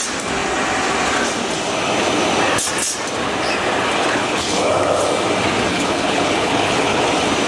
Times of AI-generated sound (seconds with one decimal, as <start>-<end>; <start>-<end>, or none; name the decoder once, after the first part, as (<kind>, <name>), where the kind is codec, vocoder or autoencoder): 4.0-4.7 (codec, HILCodec); 5.7-7.0